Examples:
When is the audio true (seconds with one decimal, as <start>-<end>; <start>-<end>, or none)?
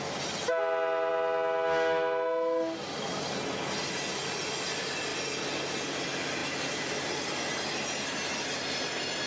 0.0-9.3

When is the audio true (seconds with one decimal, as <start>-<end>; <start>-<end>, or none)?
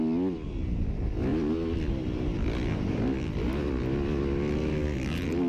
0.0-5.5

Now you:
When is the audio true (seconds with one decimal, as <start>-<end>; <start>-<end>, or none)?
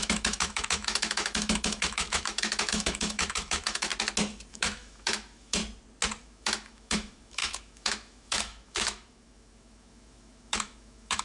3.9-4.5; 5.6-6.2